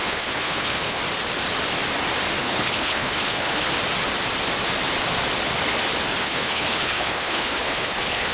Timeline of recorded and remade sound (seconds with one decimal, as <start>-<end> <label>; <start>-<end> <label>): 0.0-1.0 remade; 1.0-2.4 recorded; 2.4-3.7 remade; 3.7-6.2 recorded; 6.2-8.3 remade